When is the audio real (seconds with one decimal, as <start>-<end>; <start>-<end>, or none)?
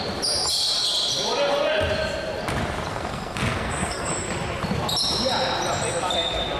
0.0-2.9; 4.1-6.6